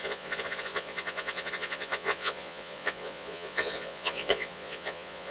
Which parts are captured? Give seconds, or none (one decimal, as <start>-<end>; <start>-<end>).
none